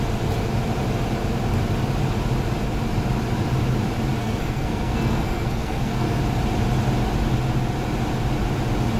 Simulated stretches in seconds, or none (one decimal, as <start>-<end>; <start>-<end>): 4.2-6.2